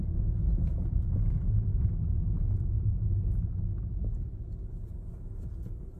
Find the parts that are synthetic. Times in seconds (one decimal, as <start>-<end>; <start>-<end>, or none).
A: none